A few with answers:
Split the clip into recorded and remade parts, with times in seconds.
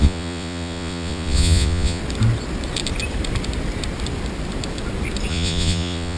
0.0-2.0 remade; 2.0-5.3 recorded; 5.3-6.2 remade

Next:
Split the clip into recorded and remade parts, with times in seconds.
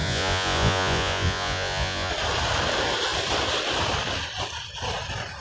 0.0-2.1 remade; 2.1-5.4 recorded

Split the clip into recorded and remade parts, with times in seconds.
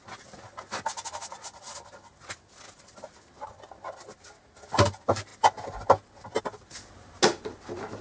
0.0-8.0 recorded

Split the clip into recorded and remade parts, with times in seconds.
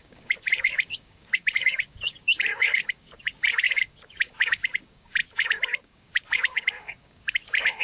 0.0-7.8 remade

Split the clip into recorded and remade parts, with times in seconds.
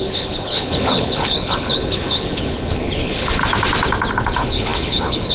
0.0-3.4 remade; 3.4-4.1 recorded; 4.1-5.3 remade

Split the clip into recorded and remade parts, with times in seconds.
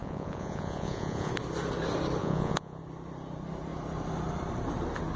0.0-1.3 remade; 1.3-2.2 recorded; 2.2-2.8 remade; 2.8-5.2 recorded